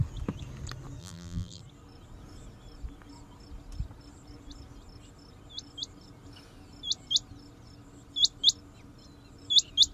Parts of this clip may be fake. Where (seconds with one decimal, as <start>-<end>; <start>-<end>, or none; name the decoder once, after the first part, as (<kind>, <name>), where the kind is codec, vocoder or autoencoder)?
1.0-1.6 (vocoder, BigVGAN v2)

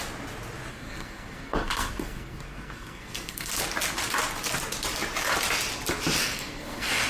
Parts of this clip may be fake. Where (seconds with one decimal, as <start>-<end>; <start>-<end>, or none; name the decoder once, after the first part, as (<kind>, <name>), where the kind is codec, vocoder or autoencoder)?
0.7-3.5 (codec, SNAC); 6.2-7.1

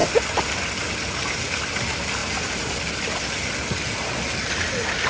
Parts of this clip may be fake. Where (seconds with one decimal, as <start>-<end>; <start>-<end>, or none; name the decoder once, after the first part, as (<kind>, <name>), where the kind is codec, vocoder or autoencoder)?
none

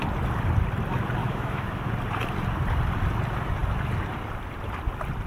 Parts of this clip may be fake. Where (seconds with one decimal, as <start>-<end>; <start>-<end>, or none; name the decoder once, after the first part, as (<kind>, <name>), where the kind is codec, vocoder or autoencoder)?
1.2-1.9 (autoencoder, DAC-VAE)

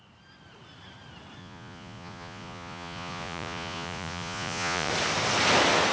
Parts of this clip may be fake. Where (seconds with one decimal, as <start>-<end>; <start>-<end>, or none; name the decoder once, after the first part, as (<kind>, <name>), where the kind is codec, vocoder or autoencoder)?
1.4-4.9 (vocoder, Vocos)

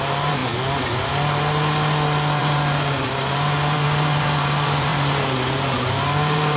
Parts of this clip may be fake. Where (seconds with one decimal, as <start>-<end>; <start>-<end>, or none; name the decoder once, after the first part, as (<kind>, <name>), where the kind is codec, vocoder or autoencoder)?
0.0-0.4 (vocoder, BigVGAN v2); 2.4-6.6

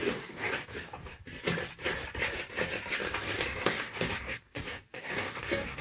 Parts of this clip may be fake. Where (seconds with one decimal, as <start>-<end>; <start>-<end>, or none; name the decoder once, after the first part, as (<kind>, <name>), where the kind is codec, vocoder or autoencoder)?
0.0-1.2 (codec, DAC); 3.1-5.8